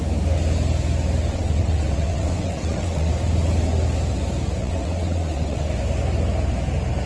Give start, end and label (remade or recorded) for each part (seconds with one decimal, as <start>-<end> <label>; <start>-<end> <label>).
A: 0.0-1.3 recorded; 1.3-3.1 remade; 3.1-4.6 recorded; 4.6-5.7 remade; 5.7-7.1 recorded